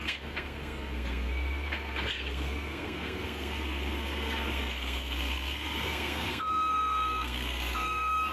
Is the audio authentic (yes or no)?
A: no